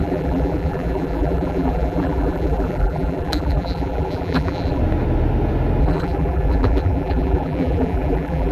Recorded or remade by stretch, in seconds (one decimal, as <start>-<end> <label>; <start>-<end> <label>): 0.0-4.8 remade; 4.8-5.8 recorded; 5.8-8.5 remade